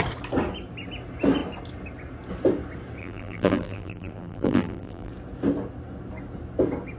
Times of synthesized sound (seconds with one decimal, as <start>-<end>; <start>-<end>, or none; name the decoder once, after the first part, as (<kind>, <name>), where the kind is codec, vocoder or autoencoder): 3.0-5.1 (vocoder, BigVGAN v2)

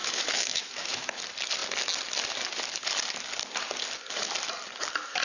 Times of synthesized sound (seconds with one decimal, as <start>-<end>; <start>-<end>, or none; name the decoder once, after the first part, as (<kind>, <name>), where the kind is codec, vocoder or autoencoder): 0.0-1.2 (autoencoder, DAC-VAE)

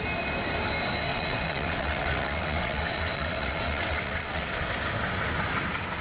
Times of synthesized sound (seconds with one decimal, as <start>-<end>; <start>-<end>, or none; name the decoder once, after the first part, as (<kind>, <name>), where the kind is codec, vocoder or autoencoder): 1.1-4.7 (vocoder, WaveNeXt)

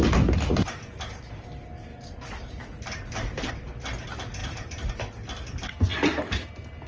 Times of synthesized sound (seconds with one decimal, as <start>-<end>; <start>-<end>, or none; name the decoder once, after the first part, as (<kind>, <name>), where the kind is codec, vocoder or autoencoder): 1.9-3.5 (vocoder, BigVGAN v2); 4.4-4.9

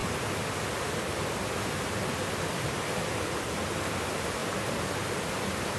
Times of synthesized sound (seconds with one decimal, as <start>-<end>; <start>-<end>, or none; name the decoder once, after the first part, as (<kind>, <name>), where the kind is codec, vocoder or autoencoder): none